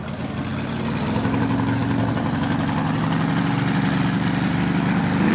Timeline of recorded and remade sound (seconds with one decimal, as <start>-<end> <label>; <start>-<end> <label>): 0.0-5.3 recorded